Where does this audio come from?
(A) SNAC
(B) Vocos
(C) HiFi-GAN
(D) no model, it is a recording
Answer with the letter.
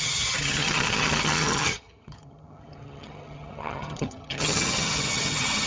C